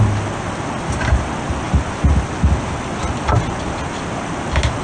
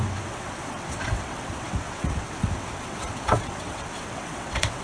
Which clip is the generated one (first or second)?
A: second